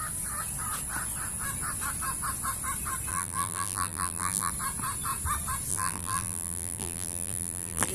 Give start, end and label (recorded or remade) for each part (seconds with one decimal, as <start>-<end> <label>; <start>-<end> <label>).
0.0-3.1 recorded; 3.1-4.5 remade; 4.5-5.7 recorded; 5.7-7.9 remade